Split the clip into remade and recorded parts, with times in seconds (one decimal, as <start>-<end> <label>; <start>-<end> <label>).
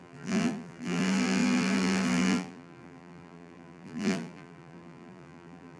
0.0-5.8 remade